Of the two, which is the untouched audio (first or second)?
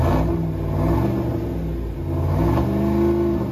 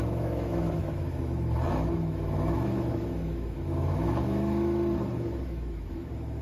first